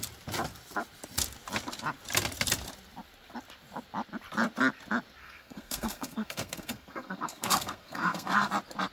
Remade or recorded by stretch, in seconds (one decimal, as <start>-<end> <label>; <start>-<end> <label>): 0.0-5.2 recorded; 5.2-8.5 remade; 8.5-8.9 recorded